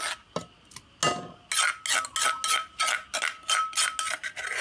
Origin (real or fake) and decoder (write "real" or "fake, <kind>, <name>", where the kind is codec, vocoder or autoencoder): real